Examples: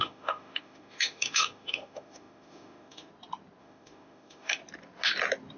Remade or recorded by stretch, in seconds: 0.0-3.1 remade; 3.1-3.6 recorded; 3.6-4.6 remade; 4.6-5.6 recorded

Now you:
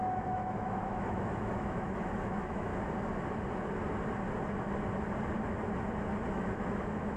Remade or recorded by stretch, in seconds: 0.0-2.7 remade; 2.7-6.3 recorded; 6.3-7.2 remade

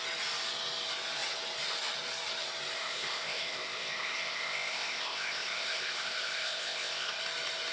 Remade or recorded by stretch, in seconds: 0.0-2.8 recorded; 2.8-7.2 remade; 7.2-7.7 recorded